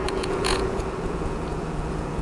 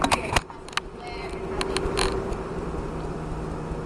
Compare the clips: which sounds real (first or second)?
second